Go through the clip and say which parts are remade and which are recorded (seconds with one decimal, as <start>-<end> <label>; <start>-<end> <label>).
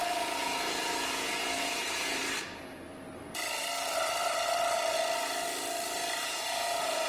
0.0-2.2 remade; 2.2-6.2 recorded; 6.2-7.1 remade